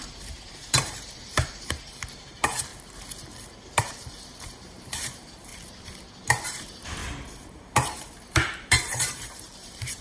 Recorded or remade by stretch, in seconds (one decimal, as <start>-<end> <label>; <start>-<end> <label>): 0.0-2.7 remade; 2.7-3.8 recorded; 3.8-5.5 remade; 5.5-6.1 recorded; 6.1-10.0 remade